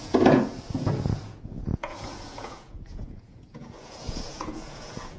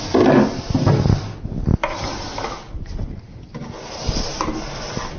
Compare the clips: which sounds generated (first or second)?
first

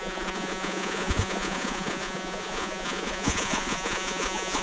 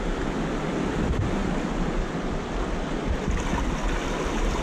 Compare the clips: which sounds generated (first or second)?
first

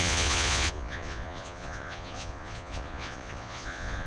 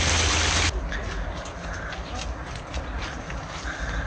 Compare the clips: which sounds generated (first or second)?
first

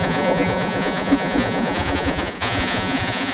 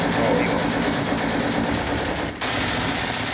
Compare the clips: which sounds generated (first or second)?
first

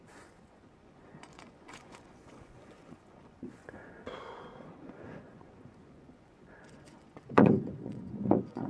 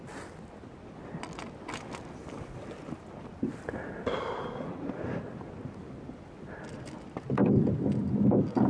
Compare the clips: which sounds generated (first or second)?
first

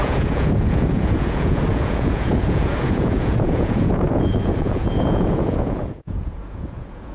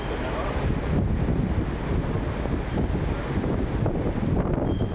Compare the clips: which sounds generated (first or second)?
first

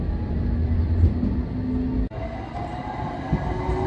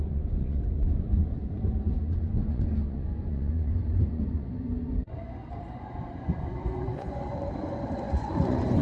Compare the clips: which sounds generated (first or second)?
second